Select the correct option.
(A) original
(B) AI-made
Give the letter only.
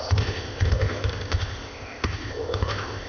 B